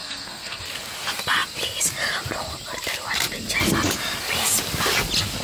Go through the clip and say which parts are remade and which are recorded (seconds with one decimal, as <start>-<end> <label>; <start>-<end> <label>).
0.0-0.6 remade; 0.6-5.4 recorded